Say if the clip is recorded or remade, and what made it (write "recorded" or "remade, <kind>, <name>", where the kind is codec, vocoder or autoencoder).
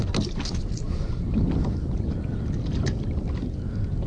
recorded